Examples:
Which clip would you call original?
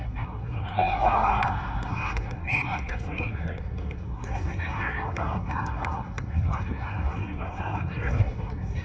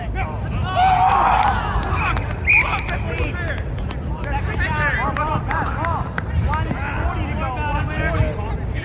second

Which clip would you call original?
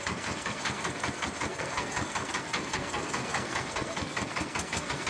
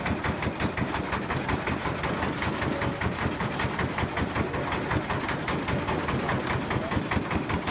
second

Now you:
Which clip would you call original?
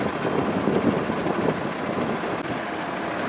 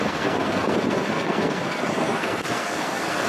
first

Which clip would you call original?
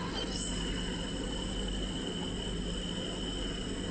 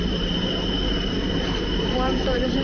first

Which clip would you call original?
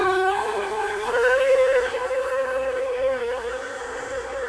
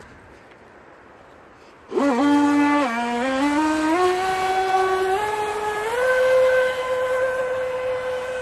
second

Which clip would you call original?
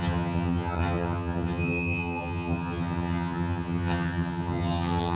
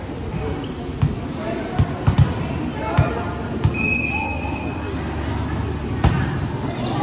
second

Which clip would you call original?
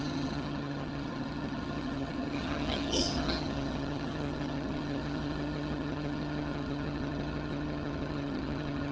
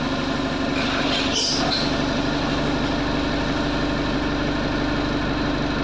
second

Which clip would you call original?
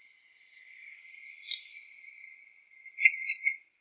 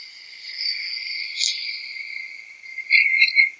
first